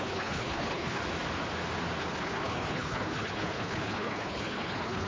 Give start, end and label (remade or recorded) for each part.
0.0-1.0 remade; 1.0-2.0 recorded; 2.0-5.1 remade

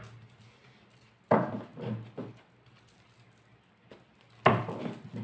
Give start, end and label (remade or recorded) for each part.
0.0-1.7 recorded; 1.7-4.8 remade; 4.8-5.2 recorded

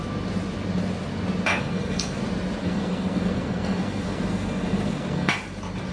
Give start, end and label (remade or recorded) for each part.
0.0-1.5 recorded; 1.5-2.2 remade; 2.2-2.6 recorded; 2.6-5.4 remade; 5.4-5.9 recorded

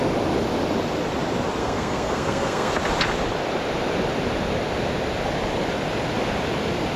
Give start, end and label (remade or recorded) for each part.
0.0-1.6 recorded; 1.6-2.7 remade; 2.7-7.0 recorded

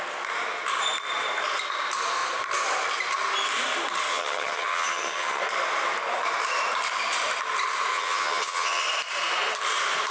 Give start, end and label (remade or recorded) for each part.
0.0-4.1 recorded; 4.1-5.4 remade; 5.4-7.9 recorded; 7.9-8.8 remade; 8.8-10.1 recorded

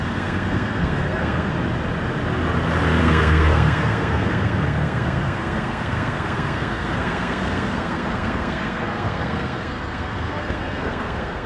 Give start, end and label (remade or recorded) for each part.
0.0-1.5 remade; 1.5-3.0 recorded; 3.0-11.5 remade

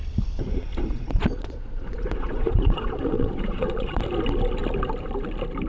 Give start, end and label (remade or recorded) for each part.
0.0-0.8 recorded; 0.8-4.0 remade; 4.0-5.7 recorded